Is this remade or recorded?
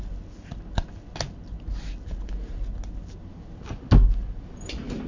recorded